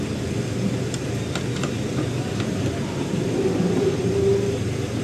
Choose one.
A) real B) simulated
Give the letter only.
A